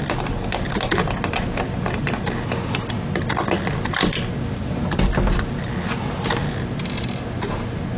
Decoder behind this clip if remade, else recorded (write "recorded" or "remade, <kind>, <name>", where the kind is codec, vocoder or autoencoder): recorded